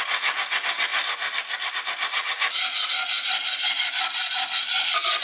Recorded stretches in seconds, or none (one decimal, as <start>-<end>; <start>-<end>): 0.0-5.2